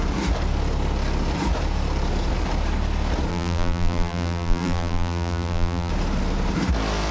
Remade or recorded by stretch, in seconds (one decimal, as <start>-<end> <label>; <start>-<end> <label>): 0.0-3.3 recorded; 3.3-5.9 remade; 5.9-7.1 recorded